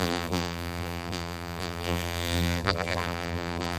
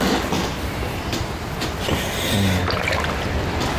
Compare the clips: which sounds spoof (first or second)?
first